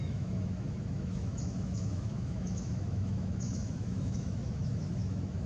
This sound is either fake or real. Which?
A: fake